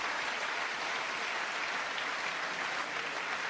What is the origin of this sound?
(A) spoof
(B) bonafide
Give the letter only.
B